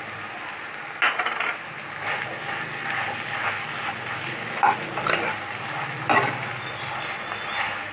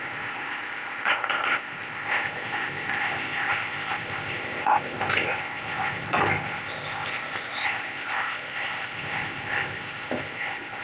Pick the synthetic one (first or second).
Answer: second